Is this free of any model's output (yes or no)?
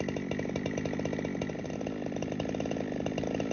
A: yes